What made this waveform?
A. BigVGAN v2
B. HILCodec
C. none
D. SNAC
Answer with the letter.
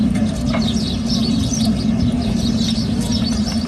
C